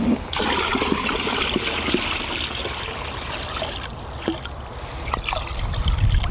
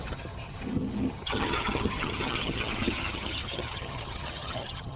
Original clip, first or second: first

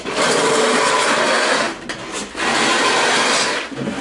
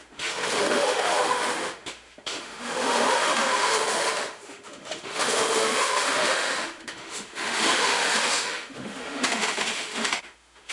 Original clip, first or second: first